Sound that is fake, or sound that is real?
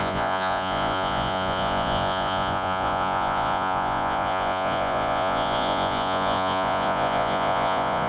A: fake